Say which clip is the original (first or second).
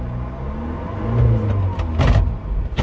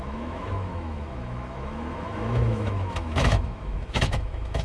first